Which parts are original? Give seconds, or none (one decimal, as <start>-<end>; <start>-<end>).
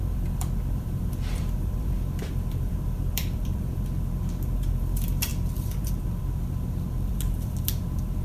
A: none